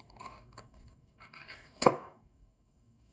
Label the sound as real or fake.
fake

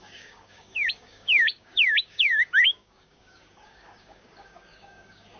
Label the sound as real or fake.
fake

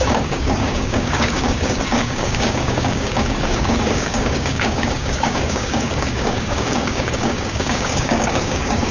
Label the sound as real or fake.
fake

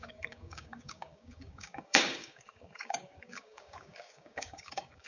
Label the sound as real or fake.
fake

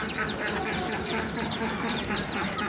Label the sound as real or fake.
real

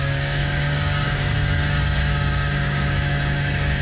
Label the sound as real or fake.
fake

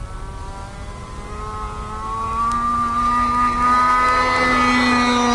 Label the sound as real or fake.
real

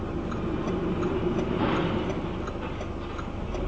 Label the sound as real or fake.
real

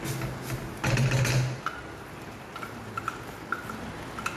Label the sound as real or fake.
real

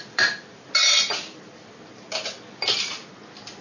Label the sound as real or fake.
real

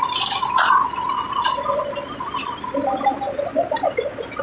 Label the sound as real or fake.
real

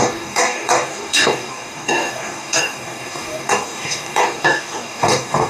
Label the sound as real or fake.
fake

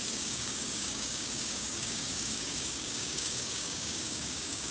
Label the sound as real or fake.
fake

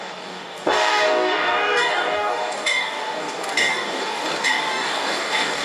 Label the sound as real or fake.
fake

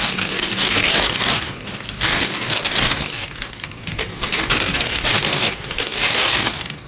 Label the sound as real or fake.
fake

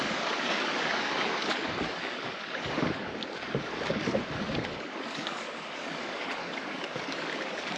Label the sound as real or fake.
fake